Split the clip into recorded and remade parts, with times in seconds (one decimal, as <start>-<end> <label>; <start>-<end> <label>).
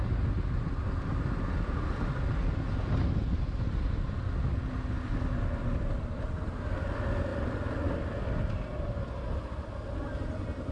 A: 0.0-10.7 recorded